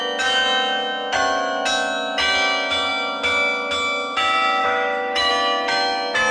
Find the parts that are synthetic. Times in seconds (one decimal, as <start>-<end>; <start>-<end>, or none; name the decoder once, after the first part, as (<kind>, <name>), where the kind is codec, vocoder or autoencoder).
4.6-5.3 (autoencoder, DAC-VAE)